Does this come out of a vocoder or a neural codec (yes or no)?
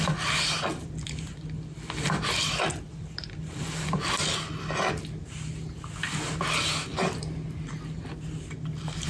no